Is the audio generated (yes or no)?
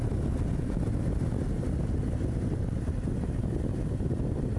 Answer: no